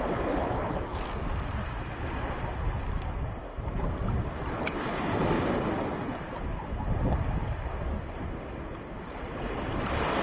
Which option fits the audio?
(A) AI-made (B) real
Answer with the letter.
B